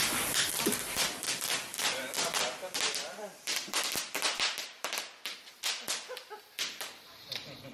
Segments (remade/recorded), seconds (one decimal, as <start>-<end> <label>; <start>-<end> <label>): 0.0-1.7 recorded; 1.7-5.1 remade; 5.1-7.7 recorded